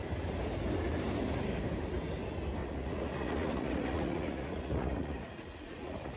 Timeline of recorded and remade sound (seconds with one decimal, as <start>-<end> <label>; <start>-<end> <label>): 0.0-2.6 recorded; 2.6-6.2 remade